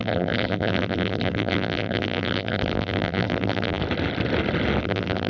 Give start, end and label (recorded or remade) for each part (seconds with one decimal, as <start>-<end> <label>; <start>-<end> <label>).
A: 0.0-3.8 remade; 3.8-4.8 recorded; 4.8-5.3 remade

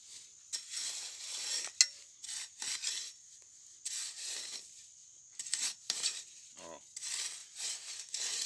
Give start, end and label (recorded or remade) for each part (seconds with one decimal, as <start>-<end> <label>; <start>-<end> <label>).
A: 0.0-5.0 recorded; 5.0-6.5 remade; 6.5-7.4 recorded; 7.4-8.1 remade; 8.1-8.5 recorded

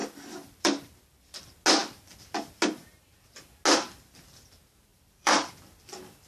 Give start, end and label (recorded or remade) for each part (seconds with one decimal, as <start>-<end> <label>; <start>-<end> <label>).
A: 0.0-0.9 remade; 0.9-4.9 recorded; 4.9-5.5 remade; 5.5-6.3 recorded